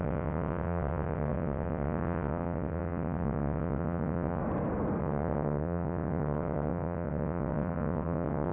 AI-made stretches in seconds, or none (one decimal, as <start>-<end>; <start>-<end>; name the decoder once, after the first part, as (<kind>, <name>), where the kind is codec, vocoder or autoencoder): 0.0-4.4 (vocoder, WaveNeXt); 5.0-8.5